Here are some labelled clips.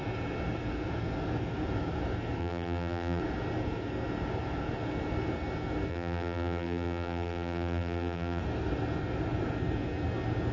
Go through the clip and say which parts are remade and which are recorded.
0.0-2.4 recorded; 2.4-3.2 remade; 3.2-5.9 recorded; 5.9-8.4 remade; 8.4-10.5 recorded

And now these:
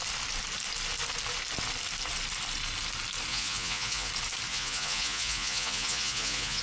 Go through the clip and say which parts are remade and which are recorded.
0.0-3.3 recorded; 3.3-4.1 remade; 4.1-4.5 recorded; 4.5-6.6 remade

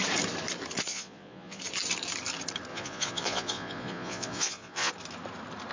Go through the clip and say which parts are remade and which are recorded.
0.0-0.9 recorded; 0.9-1.6 remade; 1.6-2.7 recorded; 2.7-4.9 remade; 4.9-5.7 recorded

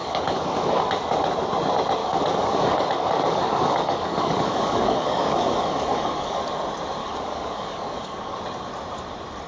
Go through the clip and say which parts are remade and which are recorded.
0.0-0.8 remade; 0.8-2.0 recorded; 2.0-6.4 remade; 6.4-7.0 recorded; 7.0-8.4 remade; 8.4-9.5 recorded

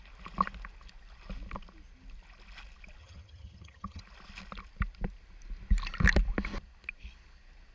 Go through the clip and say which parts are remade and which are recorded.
0.0-3.0 recorded; 3.0-4.0 remade; 4.0-7.7 recorded

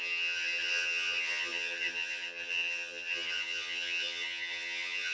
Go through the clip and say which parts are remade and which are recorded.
0.0-5.1 remade

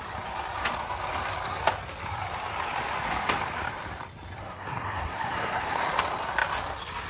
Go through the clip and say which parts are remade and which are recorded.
0.0-4.4 recorded; 4.4-5.8 remade; 5.8-7.1 recorded

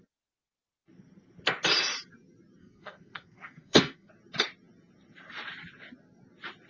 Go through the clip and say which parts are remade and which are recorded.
0.0-2.6 recorded; 2.6-4.1 remade; 4.1-6.7 recorded